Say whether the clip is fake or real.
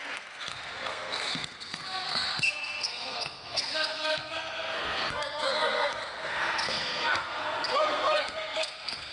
fake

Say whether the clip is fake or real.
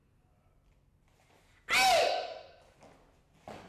real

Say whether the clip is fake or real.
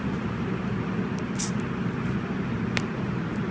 real